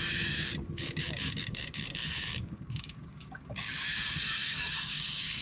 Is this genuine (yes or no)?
no